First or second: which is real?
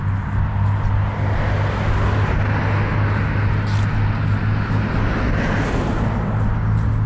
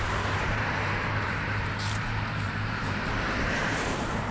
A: first